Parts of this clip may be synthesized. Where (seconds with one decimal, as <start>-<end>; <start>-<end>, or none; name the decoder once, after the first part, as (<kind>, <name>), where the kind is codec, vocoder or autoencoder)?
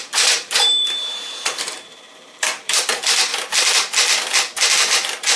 0.0-3.3 (vocoder, BigVGAN v2); 4.7-5.4